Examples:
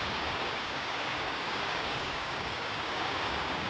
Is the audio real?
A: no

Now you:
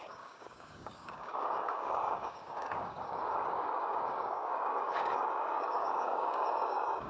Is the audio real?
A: no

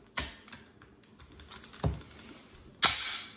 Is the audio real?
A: yes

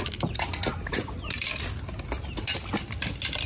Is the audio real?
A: yes